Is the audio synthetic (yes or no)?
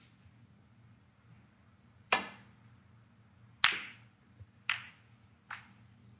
no